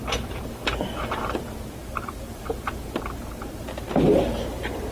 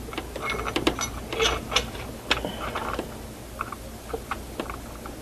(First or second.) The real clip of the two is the second